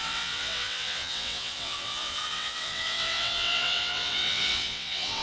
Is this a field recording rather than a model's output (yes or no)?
no